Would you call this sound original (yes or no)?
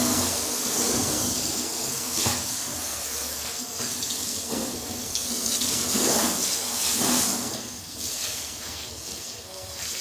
no